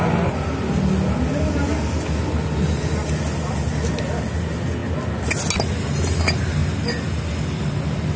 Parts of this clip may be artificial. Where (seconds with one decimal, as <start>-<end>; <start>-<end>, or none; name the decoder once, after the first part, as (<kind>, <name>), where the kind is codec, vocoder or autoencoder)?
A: none